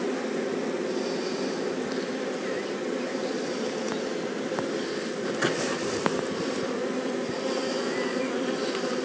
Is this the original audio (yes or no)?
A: yes